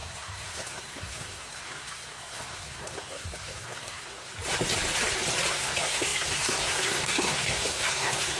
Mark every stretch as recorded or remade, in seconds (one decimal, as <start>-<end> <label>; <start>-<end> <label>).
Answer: 0.0-4.3 remade; 4.3-5.5 recorded; 5.5-8.4 remade